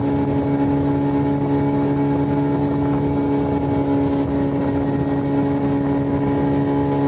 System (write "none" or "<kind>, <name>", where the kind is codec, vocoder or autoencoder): none